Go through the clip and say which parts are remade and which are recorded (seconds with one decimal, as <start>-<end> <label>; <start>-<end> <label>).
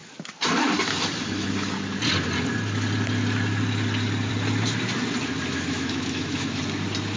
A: 0.0-5.5 recorded; 5.5-6.6 remade; 6.6-7.2 recorded